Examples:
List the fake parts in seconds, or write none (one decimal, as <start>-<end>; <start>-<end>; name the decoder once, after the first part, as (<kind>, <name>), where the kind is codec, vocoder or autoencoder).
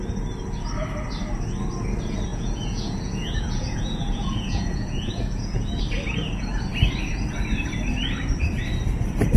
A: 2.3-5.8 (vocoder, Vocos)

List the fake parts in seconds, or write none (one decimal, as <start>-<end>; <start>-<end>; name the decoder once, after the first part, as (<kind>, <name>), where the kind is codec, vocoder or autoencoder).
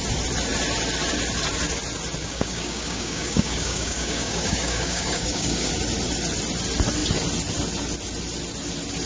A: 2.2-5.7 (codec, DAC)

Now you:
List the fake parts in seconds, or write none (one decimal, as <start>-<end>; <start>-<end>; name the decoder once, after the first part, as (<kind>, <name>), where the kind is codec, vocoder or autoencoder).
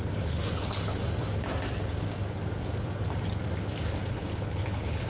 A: 0.0-1.0 (codec, HILCodec); 4.1-5.1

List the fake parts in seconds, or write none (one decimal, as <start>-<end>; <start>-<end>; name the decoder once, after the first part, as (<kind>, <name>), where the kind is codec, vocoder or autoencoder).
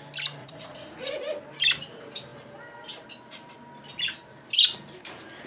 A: 0.4-1.1 (vocoder, Vocos)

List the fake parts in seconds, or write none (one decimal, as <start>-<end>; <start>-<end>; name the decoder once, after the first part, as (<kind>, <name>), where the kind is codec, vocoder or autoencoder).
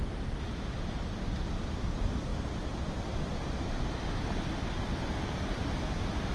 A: none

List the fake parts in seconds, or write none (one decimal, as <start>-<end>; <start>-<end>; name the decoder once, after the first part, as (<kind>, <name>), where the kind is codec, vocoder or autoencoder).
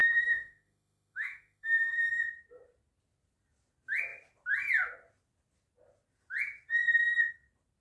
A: 0.0-2.0 (autoencoder, DAC-VAE)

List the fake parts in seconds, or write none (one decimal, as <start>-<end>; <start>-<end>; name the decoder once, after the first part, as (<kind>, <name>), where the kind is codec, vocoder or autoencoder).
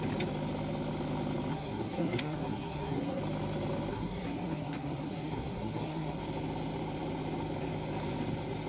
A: 1.5-3.2 (codec, SNAC); 3.9-6.2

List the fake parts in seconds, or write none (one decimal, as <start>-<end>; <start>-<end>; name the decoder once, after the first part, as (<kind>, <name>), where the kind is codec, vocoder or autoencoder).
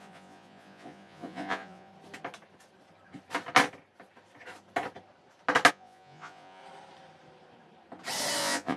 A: 0.0-1.9 (vocoder, Vocos); 5.7-6.6; 8.4-8.8